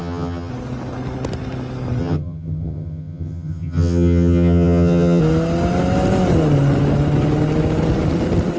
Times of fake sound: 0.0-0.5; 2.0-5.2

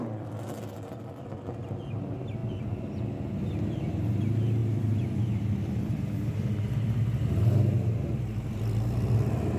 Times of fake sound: none

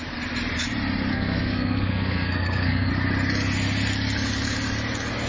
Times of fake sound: 1.1-2.9

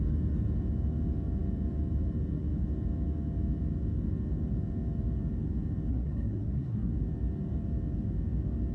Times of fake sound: 5.9-6.9

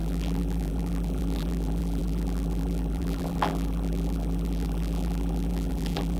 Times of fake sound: 0.0-6.2

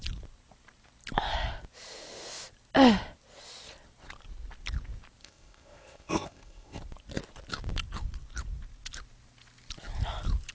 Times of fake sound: 5.2-6.8

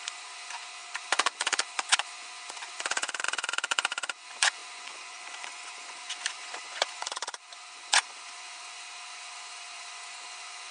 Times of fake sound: 0.0-10.7

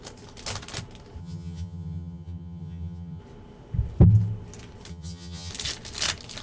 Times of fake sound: 1.2-3.2; 4.9-5.5